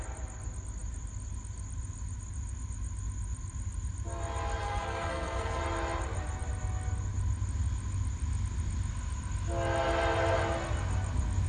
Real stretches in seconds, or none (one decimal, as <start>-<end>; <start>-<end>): 0.0-4.6; 5.6-11.5